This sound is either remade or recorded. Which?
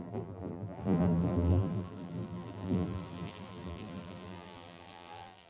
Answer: remade